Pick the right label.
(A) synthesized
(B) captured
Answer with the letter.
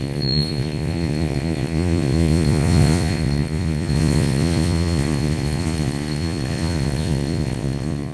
A